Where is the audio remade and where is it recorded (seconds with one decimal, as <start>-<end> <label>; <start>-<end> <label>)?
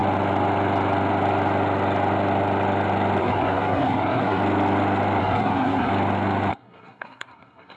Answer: 0.0-3.2 recorded; 3.2-4.4 remade; 4.4-5.2 recorded; 5.2-5.9 remade; 5.9-6.5 recorded; 6.5-7.8 remade